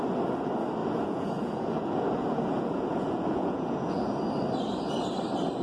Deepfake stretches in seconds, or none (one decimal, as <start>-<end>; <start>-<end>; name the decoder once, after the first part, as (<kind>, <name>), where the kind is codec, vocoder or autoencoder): 0.8-4.2 (vocoder, Vocos)